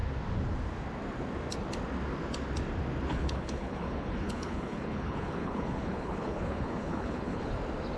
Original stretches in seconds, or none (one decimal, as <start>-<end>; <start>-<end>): 0.0-3.1; 7.5-8.0